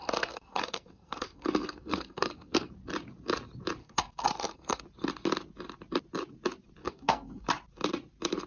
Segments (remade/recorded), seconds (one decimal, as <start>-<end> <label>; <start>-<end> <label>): 0.0-2.7 remade; 2.7-3.8 recorded; 3.8-4.8 remade; 4.8-6.8 recorded; 6.8-7.5 remade; 7.5-8.5 recorded